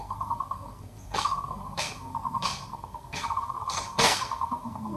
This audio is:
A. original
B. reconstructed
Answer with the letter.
B